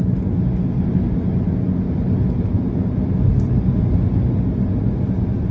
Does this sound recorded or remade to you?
recorded